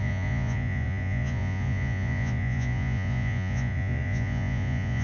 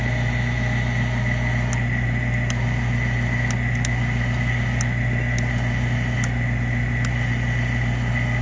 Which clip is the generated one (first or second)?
first